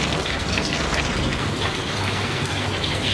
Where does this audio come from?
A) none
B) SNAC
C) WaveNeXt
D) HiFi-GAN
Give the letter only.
B